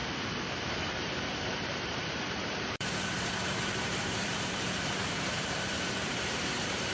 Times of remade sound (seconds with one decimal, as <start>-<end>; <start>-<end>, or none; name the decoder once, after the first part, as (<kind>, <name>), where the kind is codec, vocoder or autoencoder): 0.0-6.9 (vocoder, BigVGAN v2)